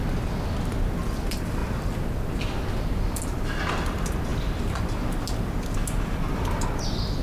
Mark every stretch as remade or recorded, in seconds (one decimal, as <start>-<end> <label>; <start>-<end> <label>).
0.0-7.2 recorded